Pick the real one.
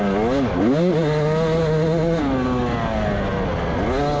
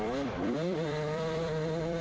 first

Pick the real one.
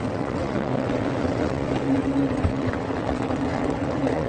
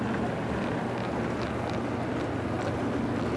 second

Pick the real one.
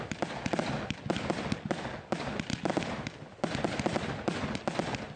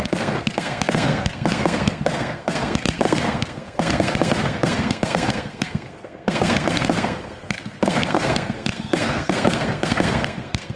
first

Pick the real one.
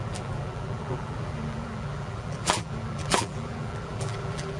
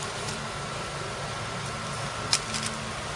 second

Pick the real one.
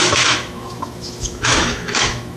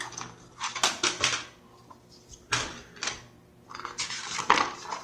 second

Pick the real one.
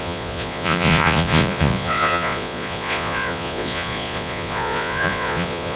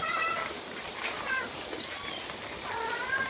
second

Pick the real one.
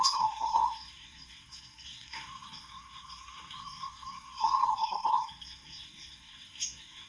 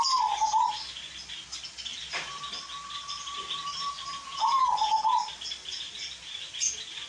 second